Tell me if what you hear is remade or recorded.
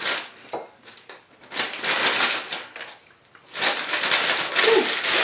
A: recorded